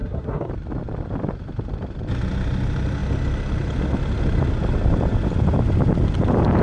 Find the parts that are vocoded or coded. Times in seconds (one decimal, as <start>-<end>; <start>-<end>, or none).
0.0-0.5